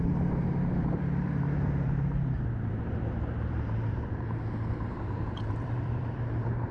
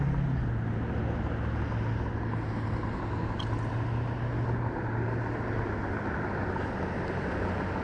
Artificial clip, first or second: first